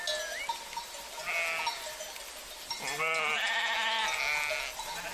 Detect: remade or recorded recorded